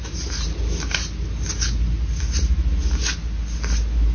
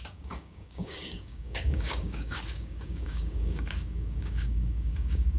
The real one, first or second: first